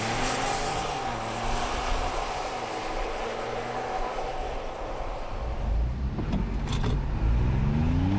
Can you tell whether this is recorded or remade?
recorded